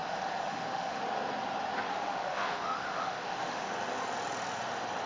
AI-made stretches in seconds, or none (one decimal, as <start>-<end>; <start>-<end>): 0.0-1.0; 1.9-3.7